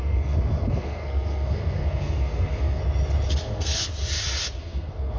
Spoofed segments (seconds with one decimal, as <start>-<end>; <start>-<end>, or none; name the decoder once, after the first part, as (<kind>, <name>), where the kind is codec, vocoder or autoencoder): 0.0-2.8 (codec, SNAC); 3.3-3.9; 4.6-5.2